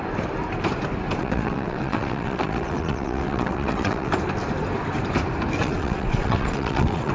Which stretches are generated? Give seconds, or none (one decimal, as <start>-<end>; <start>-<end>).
1.2-4.1; 5.6-7.1